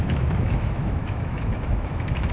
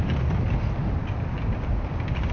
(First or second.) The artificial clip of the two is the first